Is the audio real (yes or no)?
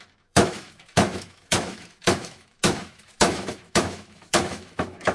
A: no